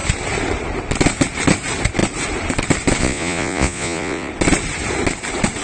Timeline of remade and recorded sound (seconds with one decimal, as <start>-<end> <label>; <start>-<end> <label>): 0.0-3.0 recorded; 3.0-4.3 remade; 4.3-5.6 recorded